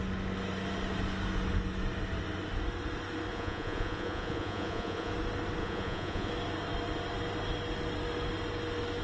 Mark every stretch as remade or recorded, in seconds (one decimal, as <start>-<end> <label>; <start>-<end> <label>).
0.0-3.3 recorded; 3.3-5.1 remade; 5.1-5.6 recorded; 5.6-6.3 remade; 6.3-9.0 recorded